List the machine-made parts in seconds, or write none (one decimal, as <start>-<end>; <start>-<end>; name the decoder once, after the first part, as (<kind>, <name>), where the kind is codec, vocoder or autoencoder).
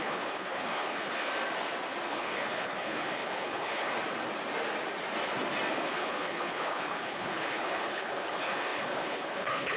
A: 0.0-1.3 (codec, HILCodec); 2.1-3.9; 5.7-9.8